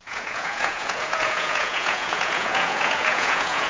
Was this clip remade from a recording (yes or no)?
yes